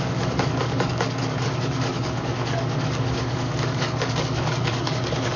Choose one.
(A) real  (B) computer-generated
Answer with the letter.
B